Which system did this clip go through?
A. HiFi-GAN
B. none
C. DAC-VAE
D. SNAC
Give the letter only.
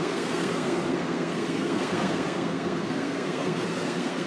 D